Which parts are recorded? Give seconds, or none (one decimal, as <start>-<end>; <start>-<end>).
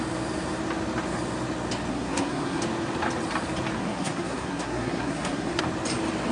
0.0-1.9; 2.6-3.8; 5.6-6.3